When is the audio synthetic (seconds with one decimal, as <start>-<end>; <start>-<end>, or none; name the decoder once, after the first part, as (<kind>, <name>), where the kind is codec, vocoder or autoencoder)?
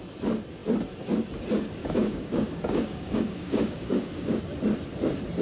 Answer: 1.8-4.4 (codec, DAC)